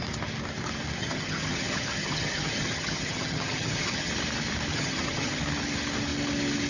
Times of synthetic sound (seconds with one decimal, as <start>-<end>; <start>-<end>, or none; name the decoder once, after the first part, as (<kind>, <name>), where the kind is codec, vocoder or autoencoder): 1.0-4.1 (vocoder, HiFi-GAN); 4.7-5.4